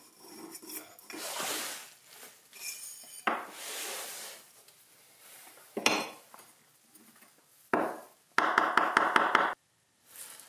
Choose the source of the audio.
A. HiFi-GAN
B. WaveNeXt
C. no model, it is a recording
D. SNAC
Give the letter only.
C